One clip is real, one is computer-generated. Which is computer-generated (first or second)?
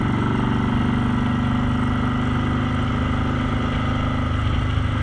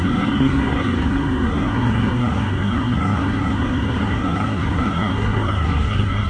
second